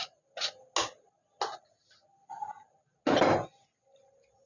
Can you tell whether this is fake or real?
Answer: real